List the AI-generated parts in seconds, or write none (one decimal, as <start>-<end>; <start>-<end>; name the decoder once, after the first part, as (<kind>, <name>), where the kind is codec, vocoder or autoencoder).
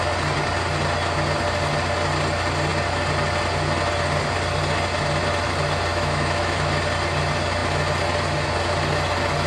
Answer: 5.9-6.7 (autoencoder, DAC-VAE)